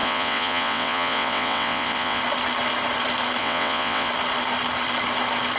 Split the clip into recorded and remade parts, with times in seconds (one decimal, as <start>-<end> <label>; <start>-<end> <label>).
0.0-2.2 remade; 2.2-3.4 recorded; 3.4-4.1 remade; 4.1-5.6 recorded